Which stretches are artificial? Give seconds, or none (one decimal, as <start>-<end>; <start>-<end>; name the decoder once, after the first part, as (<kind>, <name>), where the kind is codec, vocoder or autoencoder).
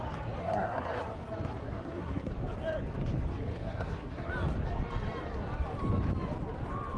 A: 0.4-1.0 (codec, SNAC); 1.6-2.3; 3.5-4.3